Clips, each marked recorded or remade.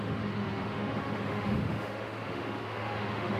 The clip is remade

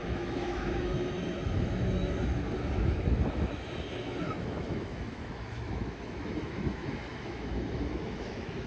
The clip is remade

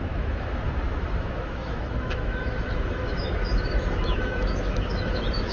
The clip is remade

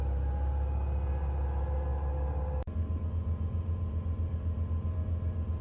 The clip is recorded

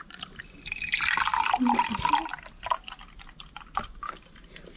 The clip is recorded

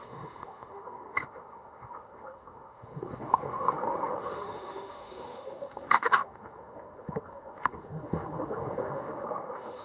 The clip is remade